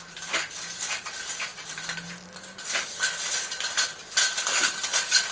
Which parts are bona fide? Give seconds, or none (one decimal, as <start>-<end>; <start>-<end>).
0.0-5.3